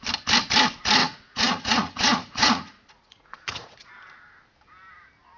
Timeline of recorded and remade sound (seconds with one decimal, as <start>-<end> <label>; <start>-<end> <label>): 0.0-1.0 recorded; 1.0-3.9 remade; 3.9-5.4 recorded